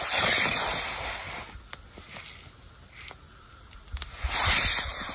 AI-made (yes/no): no